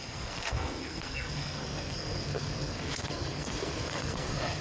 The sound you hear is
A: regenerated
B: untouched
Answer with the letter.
A